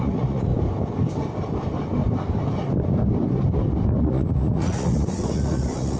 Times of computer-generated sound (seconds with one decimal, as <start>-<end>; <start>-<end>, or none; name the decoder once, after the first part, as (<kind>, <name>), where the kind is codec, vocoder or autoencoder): 0.0-0.5 (vocoder, Vocos); 4.0-6.0